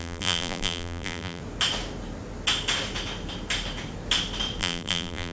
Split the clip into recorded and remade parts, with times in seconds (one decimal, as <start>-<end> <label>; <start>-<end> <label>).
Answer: 0.0-1.4 remade; 1.4-4.6 recorded; 4.6-5.3 remade